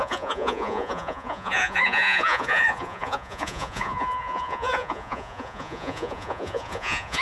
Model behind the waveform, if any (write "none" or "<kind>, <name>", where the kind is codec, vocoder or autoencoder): vocoder, Vocos